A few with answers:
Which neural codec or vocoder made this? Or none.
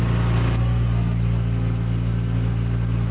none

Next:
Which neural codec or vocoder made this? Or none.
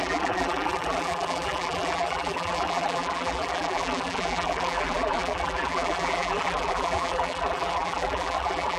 vocoder, BigVGAN v2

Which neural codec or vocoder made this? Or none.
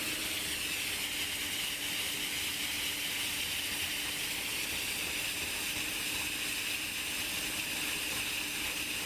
none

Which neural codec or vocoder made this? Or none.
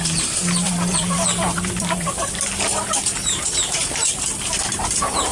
vocoder, BigVGAN v2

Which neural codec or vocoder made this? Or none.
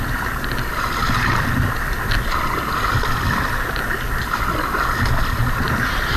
none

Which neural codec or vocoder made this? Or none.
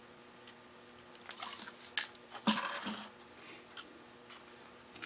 none